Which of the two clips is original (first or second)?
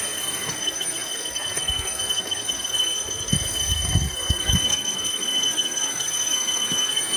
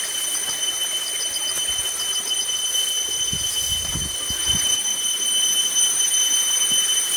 second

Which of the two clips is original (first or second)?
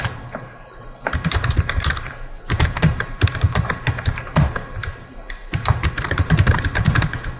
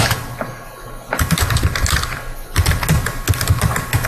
second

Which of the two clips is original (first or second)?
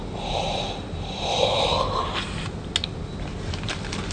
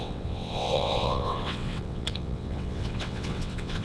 first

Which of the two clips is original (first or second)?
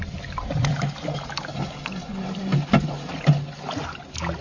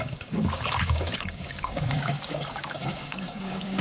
first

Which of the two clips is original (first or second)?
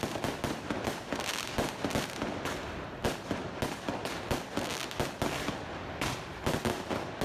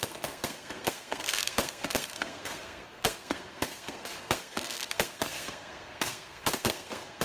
first